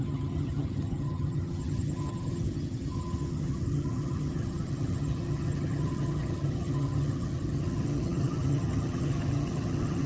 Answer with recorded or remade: remade